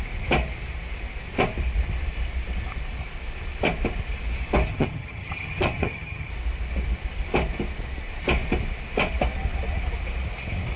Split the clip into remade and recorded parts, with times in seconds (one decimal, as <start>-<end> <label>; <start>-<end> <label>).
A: 0.0-4.7 recorded; 4.7-6.3 remade; 6.3-10.8 recorded